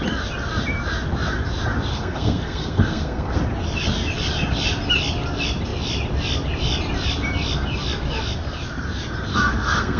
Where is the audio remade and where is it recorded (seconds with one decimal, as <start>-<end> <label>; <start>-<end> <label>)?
0.0-1.9 recorded; 1.9-3.4 remade; 3.4-9.3 recorded; 9.3-10.0 remade